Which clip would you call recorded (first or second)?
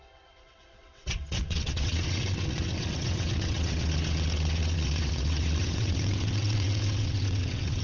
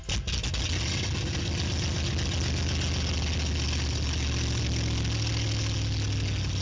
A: second